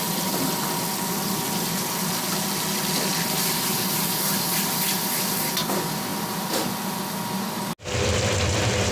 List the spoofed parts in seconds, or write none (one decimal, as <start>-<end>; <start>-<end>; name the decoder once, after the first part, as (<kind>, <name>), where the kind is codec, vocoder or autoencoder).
none